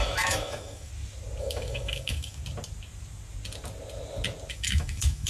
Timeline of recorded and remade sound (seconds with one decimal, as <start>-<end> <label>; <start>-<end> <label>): 0.0-0.9 remade; 0.9-1.4 recorded; 1.4-2.4 remade; 2.4-4.5 recorded; 4.5-5.3 remade